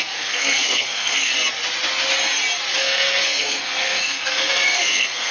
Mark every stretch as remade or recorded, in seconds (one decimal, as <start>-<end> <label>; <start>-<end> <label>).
0.0-1.3 remade; 1.3-2.7 recorded; 2.7-5.3 remade